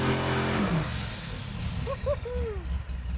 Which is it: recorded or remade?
recorded